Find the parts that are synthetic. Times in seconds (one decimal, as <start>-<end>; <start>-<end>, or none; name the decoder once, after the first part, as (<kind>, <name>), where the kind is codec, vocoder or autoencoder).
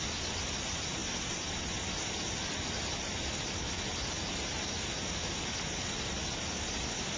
none